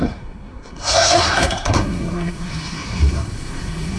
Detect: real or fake fake